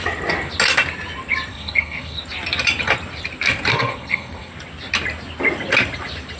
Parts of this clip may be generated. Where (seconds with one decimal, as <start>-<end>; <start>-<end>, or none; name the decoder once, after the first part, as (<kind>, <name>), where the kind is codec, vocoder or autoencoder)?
1.5-2.2 (codec, SNAC); 3.7-4.5